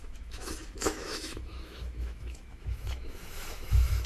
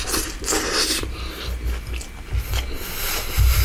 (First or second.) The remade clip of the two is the first